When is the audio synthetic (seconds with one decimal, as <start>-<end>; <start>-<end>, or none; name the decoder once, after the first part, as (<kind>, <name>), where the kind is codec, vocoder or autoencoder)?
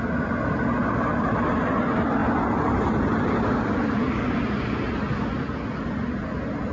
none